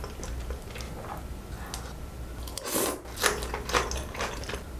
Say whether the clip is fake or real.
real